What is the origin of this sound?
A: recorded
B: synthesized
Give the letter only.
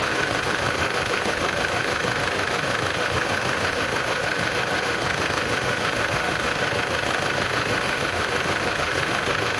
B